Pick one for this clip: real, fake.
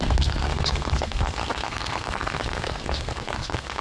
fake